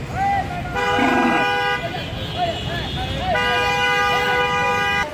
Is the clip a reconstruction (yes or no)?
no